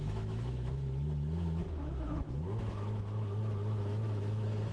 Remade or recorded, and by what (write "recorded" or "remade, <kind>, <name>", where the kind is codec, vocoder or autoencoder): remade, autoencoder, DAC-VAE